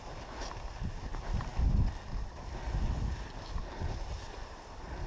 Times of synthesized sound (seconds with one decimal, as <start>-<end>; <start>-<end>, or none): none